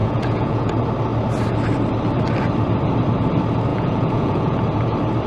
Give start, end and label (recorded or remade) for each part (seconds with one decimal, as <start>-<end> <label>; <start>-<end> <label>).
0.0-0.7 remade; 0.7-3.7 recorded; 3.7-4.6 remade; 4.6-5.3 recorded